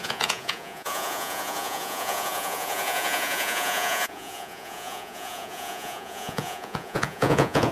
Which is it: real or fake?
fake